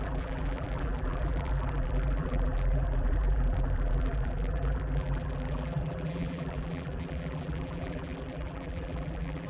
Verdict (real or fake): fake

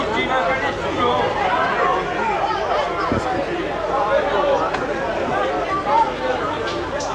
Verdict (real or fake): real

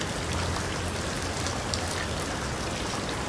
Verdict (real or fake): real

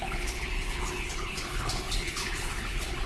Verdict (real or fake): fake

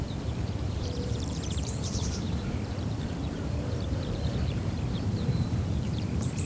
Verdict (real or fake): fake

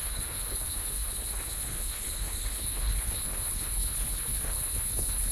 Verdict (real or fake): fake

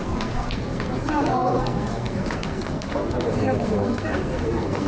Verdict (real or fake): fake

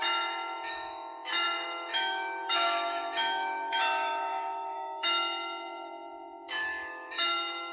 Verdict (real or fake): fake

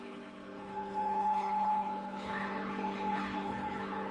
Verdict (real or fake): fake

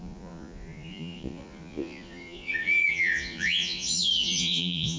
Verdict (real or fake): fake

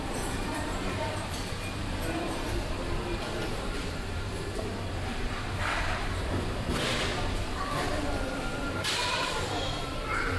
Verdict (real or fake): fake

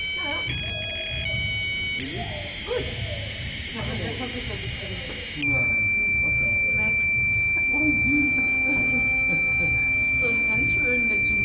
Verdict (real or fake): real